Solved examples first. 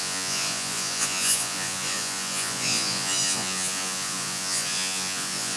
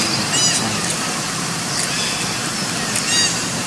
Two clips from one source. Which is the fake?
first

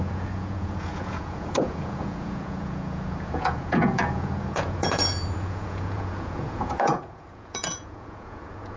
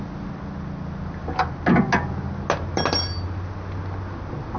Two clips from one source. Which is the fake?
first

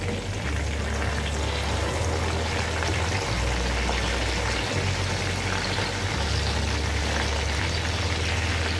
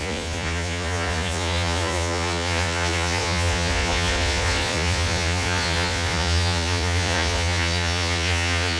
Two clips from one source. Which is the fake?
second